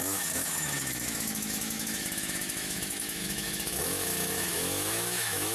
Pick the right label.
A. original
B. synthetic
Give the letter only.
B